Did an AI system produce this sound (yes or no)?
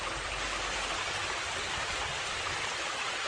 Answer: no